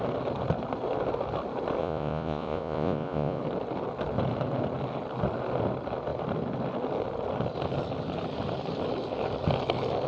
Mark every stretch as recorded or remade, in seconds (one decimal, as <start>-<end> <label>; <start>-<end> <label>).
0.0-1.8 recorded; 1.8-3.4 remade; 3.4-10.1 recorded